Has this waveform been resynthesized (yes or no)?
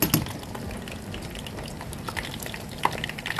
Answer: no